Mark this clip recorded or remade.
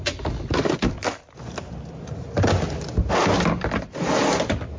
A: recorded